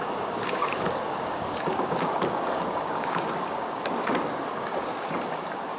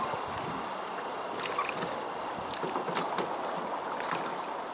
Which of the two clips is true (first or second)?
second